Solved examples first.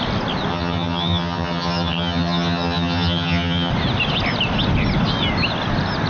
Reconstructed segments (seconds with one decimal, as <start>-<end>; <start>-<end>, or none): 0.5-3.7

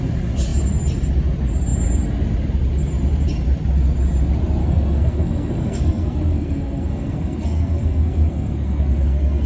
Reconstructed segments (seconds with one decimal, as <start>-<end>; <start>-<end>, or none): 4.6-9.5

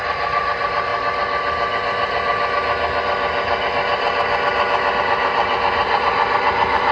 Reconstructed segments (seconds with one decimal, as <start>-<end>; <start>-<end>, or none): 0.0-0.9; 5.0-6.9